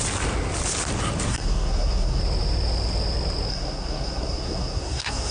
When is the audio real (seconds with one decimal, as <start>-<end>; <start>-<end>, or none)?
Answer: 0.0-1.3; 2.2-3.5